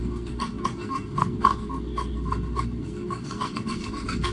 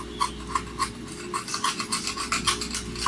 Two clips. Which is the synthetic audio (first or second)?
first